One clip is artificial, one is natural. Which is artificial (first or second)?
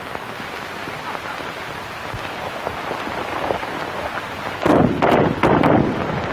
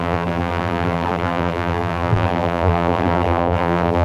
second